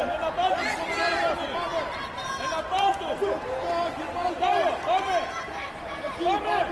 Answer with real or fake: fake